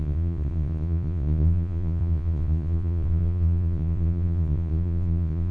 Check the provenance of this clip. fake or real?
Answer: fake